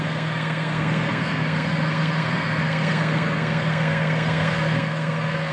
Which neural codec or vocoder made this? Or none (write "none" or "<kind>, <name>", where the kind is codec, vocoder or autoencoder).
codec, SNAC